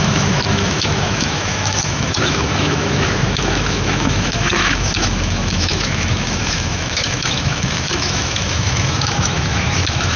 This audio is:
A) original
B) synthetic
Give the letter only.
B